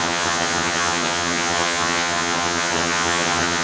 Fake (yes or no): yes